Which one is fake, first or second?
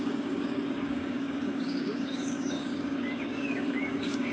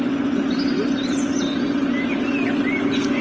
first